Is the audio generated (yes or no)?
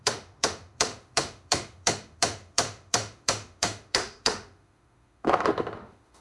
yes